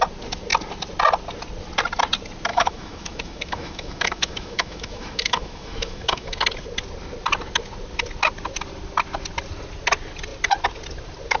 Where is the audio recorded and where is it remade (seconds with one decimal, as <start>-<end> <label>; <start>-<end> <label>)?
0.0-2.5 recorded; 2.5-6.4 remade; 6.4-11.4 recorded